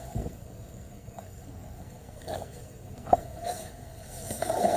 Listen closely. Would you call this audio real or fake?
fake